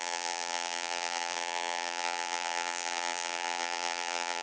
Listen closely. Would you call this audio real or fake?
fake